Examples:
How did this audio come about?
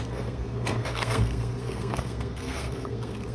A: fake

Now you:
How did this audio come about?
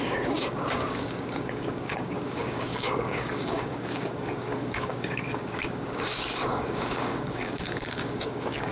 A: fake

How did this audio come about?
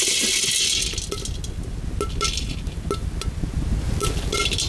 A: real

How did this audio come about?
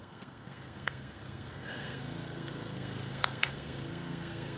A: fake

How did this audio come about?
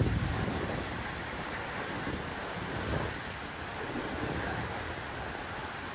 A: fake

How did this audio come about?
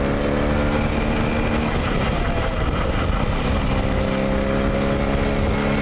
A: real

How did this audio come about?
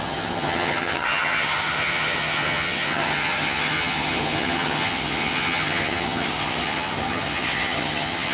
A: fake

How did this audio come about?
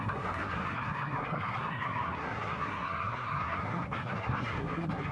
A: fake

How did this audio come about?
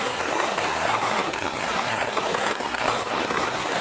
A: fake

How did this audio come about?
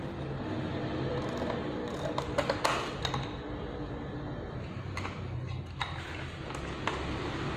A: real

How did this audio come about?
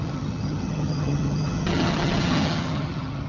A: fake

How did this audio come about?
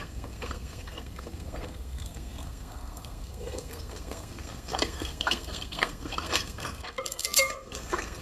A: fake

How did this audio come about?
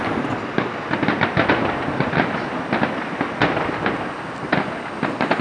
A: real